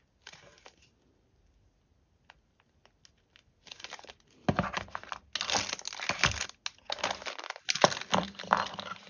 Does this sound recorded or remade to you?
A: recorded